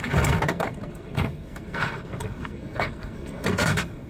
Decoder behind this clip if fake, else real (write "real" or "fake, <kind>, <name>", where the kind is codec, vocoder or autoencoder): fake, codec, SNAC